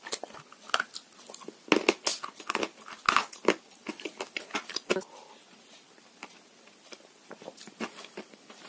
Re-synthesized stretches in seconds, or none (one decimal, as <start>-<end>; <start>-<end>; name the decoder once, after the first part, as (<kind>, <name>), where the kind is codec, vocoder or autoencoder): none